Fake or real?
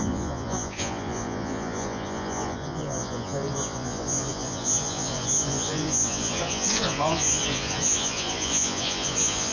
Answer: fake